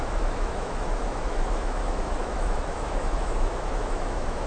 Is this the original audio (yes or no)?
no